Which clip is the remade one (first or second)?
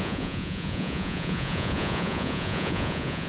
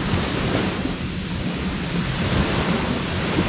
first